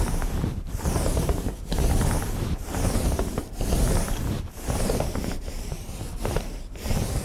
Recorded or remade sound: remade